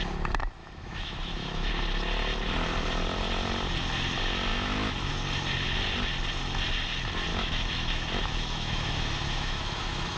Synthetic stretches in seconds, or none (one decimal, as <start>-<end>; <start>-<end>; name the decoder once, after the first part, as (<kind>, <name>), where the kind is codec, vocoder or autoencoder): 0.6-1.7 (autoencoder, DAC-VAE); 4.5-5.1; 7.3-10.2